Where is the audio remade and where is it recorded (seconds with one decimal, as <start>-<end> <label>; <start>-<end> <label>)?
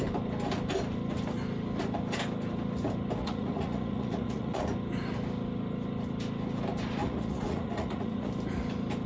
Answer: 0.0-3.2 recorded; 3.2-4.6 remade; 4.6-7.0 recorded; 7.0-8.3 remade; 8.3-9.1 recorded